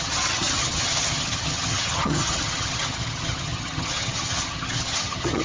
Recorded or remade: remade